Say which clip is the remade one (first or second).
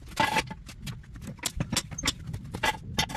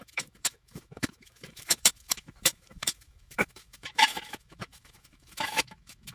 second